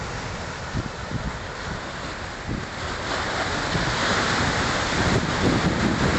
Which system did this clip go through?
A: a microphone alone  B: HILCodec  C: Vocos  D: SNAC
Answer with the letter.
A